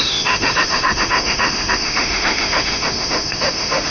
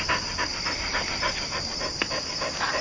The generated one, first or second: first